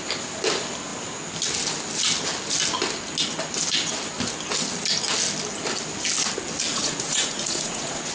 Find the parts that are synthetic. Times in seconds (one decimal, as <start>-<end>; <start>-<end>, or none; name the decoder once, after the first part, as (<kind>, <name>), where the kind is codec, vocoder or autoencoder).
6.7-8.1 (vocoder, Vocos)